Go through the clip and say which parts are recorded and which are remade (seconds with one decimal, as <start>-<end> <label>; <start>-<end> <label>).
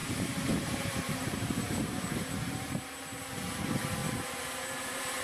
0.0-2.7 remade; 2.7-5.2 recorded